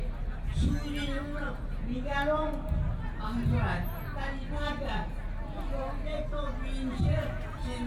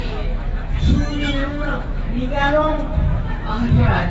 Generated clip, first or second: second